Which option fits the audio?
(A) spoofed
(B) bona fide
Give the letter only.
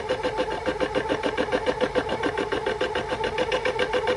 A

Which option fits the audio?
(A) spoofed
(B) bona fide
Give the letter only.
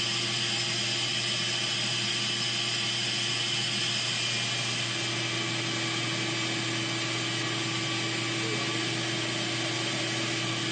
B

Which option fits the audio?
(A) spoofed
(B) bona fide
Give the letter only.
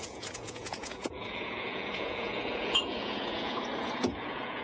A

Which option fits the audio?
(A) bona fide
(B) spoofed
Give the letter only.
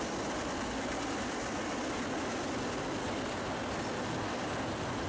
A